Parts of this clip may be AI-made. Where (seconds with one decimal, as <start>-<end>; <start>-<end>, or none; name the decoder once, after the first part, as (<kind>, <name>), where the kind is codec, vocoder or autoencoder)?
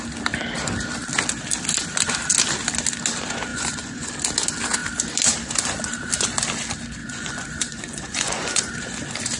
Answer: 3.5-4.1 (vocoder, Vocos); 7.0-8.7